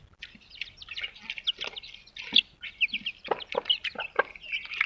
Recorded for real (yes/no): yes